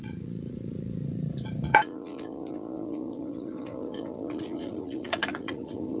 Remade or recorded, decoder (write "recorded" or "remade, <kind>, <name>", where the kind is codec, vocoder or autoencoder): remade, vocoder, Vocos